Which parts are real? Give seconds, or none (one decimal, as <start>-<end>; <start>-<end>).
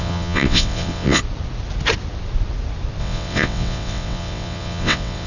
1.2-3.0